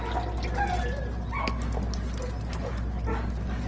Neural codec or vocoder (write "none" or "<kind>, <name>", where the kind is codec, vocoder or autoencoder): none